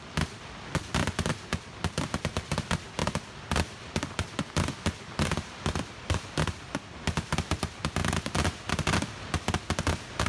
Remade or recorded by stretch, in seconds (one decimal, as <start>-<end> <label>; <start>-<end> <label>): 0.0-3.0 recorded; 3.0-6.9 remade; 6.9-10.3 recorded